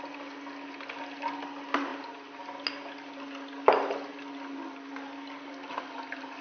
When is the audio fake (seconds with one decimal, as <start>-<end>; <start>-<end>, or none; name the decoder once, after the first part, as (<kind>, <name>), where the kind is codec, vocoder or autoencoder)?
none